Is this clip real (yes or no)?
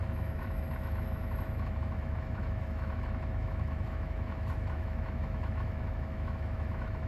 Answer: no